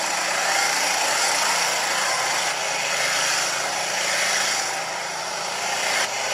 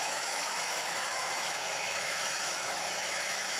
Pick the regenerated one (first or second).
second